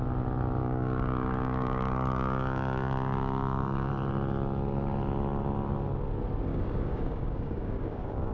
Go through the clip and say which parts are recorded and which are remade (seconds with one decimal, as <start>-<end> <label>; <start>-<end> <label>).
0.0-0.6 recorded; 0.6-3.9 remade; 3.9-6.5 recorded; 6.5-8.3 remade